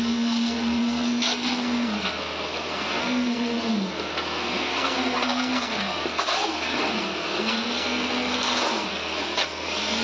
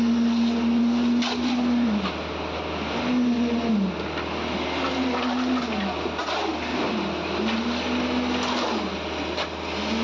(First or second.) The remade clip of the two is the first